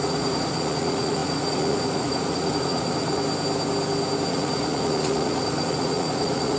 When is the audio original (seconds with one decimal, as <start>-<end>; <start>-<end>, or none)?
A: 3.2-4.3